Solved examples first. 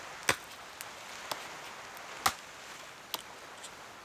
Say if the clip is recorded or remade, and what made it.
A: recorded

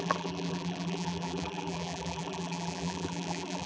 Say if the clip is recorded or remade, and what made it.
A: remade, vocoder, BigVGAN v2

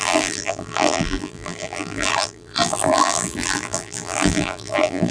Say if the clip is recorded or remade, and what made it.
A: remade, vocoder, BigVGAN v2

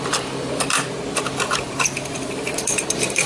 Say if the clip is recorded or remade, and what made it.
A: remade, vocoder, BigVGAN v2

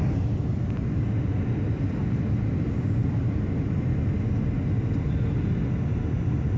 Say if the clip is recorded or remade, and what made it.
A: recorded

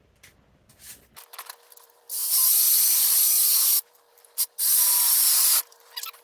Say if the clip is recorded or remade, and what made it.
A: remade, vocoder, BigVGAN v2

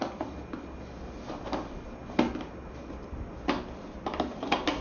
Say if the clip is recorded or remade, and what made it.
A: recorded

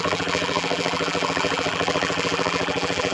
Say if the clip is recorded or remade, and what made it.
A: remade, vocoder, BigVGAN v2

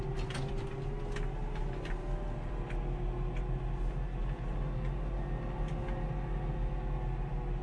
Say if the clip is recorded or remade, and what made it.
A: recorded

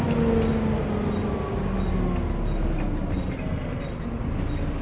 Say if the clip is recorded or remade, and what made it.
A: recorded